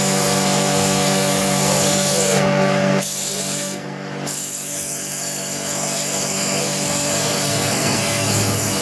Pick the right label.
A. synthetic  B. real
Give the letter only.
A